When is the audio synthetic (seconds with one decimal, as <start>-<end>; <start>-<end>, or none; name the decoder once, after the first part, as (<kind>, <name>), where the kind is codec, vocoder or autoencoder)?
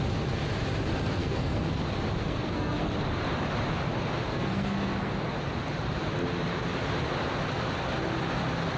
1.2-1.8 (codec, SNAC); 2.2-2.9; 4.3-5.1